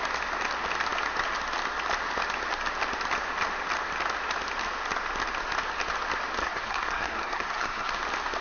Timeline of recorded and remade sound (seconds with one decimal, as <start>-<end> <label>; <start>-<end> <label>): 0.0-6.4 recorded; 6.4-7.9 remade; 7.9-8.4 recorded